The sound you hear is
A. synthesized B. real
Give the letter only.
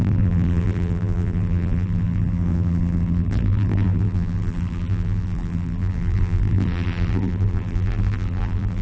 A